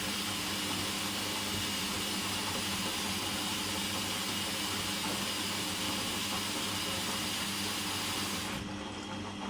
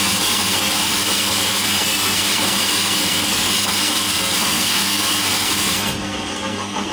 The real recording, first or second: first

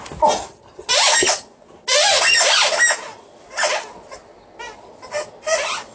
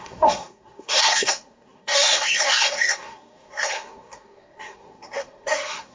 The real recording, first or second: first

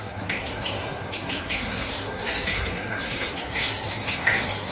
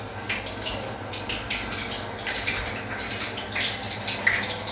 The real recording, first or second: second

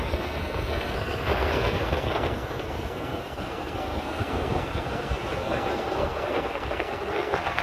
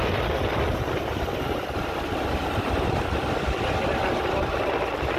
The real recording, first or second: second